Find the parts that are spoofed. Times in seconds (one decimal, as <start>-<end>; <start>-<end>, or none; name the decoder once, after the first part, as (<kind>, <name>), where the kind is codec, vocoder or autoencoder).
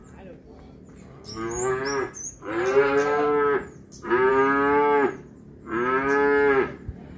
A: none